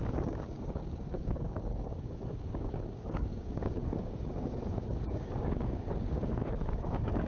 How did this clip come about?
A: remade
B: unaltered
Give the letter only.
A